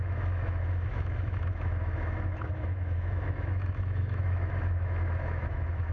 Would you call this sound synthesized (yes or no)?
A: yes